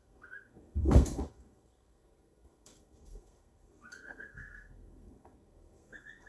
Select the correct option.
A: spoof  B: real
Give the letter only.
A